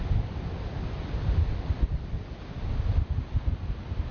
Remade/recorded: recorded